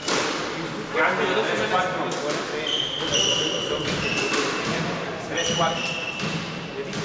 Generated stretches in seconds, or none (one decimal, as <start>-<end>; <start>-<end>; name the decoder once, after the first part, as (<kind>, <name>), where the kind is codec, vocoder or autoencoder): none